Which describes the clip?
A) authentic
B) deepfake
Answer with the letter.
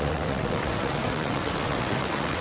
B